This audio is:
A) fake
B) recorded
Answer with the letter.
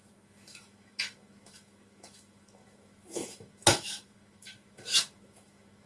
A